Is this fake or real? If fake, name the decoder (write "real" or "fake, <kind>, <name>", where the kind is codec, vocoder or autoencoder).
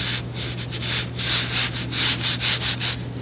real